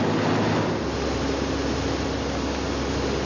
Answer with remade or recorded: recorded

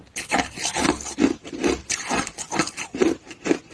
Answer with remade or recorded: recorded